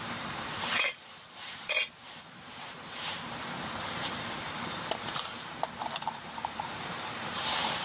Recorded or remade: remade